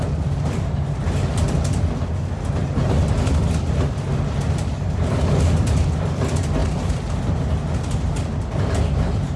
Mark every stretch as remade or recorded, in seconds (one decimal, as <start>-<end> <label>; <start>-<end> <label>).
0.0-9.4 recorded